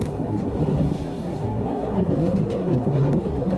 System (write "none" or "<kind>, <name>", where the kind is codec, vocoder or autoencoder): codec, SNAC